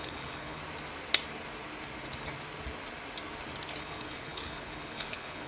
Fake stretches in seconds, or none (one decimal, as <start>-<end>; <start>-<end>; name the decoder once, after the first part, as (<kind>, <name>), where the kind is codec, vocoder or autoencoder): 0.0-0.6 (codec, HILCodec); 3.8-5.5